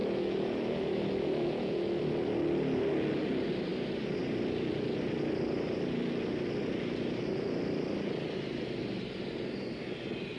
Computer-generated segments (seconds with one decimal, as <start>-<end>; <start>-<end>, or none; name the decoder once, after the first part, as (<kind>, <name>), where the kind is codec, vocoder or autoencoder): 0.0-2.0 (autoencoder, DAC-VAE)